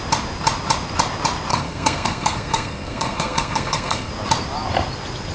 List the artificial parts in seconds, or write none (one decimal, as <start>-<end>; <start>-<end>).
1.5-4.1